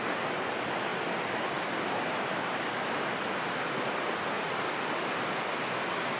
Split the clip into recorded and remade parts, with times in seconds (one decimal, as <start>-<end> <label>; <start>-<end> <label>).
0.0-0.9 recorded; 0.9-1.5 remade; 1.5-6.2 recorded